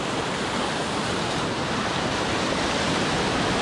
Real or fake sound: real